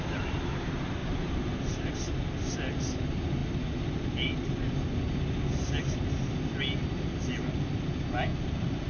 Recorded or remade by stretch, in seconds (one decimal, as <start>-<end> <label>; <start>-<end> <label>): 0.0-1.0 recorded; 1.0-1.9 remade; 1.9-8.3 recorded; 8.3-8.9 remade